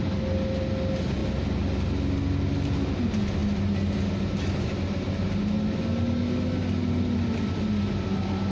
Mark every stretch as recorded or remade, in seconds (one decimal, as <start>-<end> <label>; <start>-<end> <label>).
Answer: 0.0-8.5 recorded